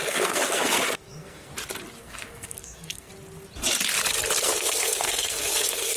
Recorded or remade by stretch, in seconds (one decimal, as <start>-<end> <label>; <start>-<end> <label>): 0.0-1.5 remade; 1.5-2.0 recorded; 2.0-3.1 remade; 3.1-4.4 recorded; 4.4-6.0 remade